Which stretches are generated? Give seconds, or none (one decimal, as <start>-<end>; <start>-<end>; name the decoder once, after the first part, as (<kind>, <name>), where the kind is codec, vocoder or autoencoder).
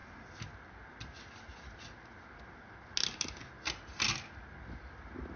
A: none